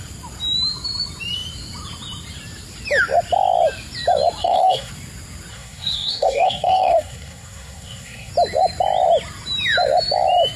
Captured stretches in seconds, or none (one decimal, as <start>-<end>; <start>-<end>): 0.0-4.4; 4.9-5.5; 8.3-10.6